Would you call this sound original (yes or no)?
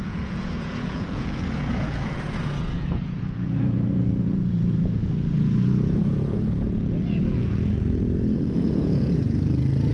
no